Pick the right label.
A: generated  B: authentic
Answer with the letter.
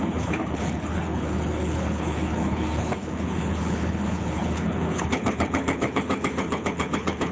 A